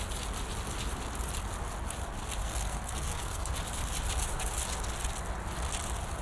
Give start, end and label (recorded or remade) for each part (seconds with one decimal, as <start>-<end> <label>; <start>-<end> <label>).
0.0-2.4 recorded; 2.4-3.5 remade; 3.5-6.2 recorded